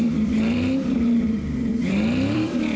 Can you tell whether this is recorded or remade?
remade